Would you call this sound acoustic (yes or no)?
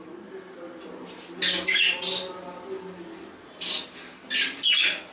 yes